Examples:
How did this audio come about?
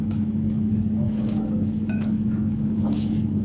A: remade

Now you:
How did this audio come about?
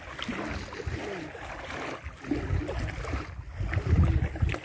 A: recorded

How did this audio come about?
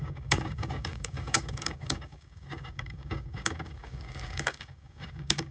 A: remade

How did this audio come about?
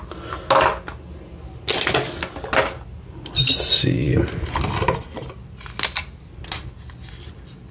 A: recorded